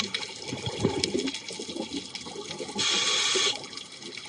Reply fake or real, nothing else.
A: real